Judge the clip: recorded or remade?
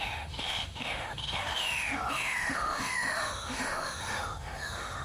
remade